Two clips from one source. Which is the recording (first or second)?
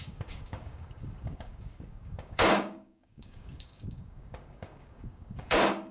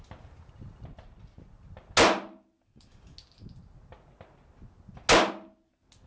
second